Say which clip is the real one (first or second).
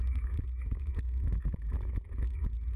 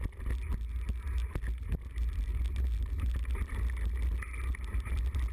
second